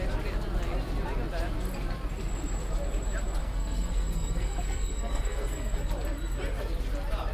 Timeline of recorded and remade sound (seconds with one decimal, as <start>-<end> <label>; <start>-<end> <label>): 0.0-3.4 recorded; 3.4-5.8 remade; 5.8-7.3 recorded